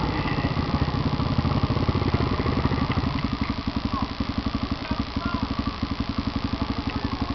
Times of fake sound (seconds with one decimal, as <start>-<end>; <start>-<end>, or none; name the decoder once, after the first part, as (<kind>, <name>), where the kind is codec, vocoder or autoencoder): none